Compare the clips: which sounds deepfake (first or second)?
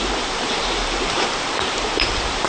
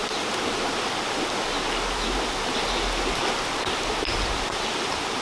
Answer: first